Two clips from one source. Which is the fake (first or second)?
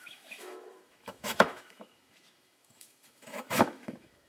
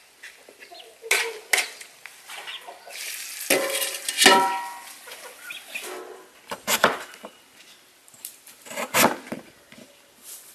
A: first